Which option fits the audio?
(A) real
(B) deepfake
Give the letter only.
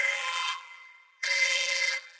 B